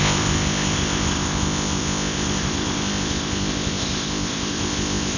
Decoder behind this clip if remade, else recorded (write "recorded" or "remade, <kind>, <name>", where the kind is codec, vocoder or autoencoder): remade, codec, ZipCodec